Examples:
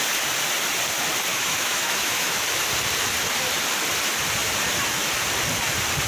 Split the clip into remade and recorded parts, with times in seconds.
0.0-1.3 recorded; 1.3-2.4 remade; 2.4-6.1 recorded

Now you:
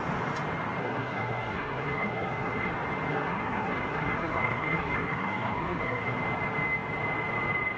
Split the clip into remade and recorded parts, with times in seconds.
0.0-0.8 recorded; 0.8-2.7 remade; 2.7-3.1 recorded; 3.1-6.2 remade; 6.2-7.8 recorded

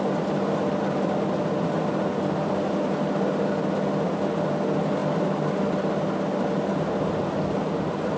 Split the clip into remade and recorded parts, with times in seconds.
0.0-8.2 recorded

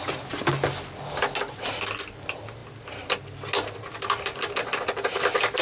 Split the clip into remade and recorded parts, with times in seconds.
0.0-5.6 recorded